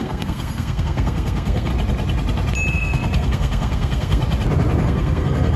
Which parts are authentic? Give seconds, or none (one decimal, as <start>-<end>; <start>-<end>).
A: 1.7-2.7; 4.2-4.8